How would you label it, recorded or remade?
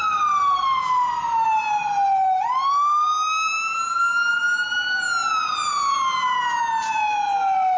recorded